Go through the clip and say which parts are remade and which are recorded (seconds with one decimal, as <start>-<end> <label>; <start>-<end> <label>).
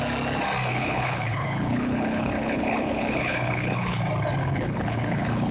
0.0-0.7 recorded; 0.7-4.0 remade; 4.0-4.4 recorded; 4.4-5.5 remade